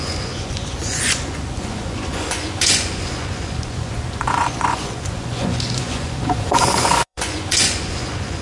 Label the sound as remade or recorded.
remade